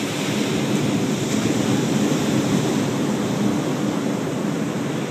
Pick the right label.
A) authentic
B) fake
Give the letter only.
A